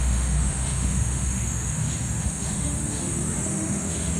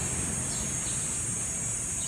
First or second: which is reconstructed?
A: first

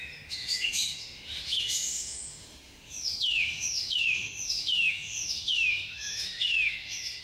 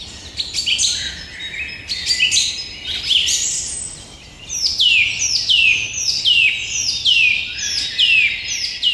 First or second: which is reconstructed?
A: first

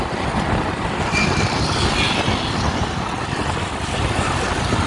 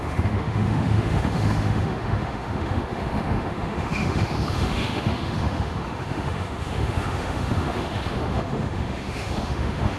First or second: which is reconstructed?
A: second